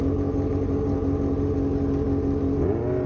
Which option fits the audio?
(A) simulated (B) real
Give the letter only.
B